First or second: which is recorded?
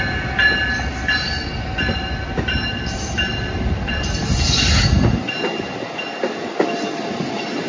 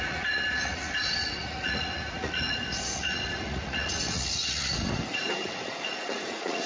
first